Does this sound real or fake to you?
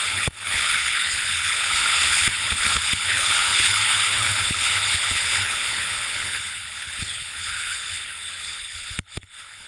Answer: fake